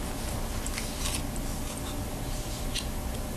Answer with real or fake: real